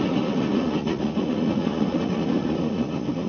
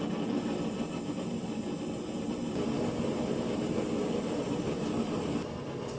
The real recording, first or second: second